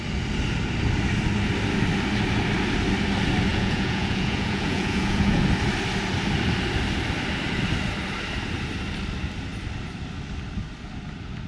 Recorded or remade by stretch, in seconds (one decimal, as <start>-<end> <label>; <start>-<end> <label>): 0.0-3.5 recorded; 3.5-5.4 remade; 5.4-11.5 recorded